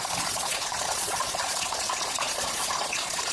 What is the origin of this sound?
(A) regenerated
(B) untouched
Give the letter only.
A